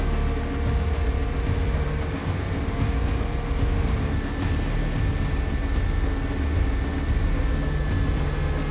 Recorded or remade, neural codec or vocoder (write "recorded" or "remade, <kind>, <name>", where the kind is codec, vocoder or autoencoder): recorded